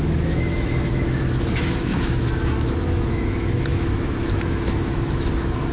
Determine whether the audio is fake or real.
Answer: fake